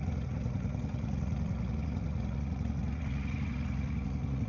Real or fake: fake